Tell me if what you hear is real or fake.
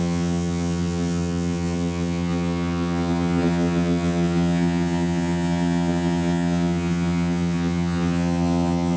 fake